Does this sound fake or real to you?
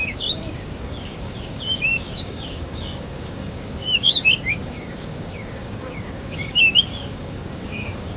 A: fake